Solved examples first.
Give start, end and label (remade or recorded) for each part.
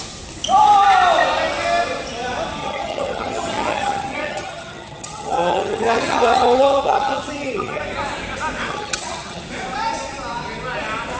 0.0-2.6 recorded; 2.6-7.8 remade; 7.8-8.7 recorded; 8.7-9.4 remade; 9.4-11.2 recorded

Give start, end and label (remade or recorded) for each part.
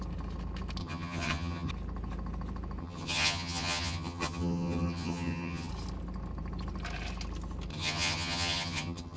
0.0-0.8 recorded; 0.8-1.7 remade; 1.7-2.8 recorded; 2.8-5.7 remade; 5.7-7.7 recorded; 7.7-9.2 remade